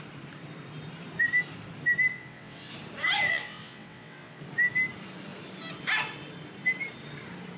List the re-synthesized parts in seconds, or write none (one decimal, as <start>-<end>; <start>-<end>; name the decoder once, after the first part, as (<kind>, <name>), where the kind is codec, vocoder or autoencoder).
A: 2.1-2.7 (vocoder, WaveNeXt); 3.3-4.4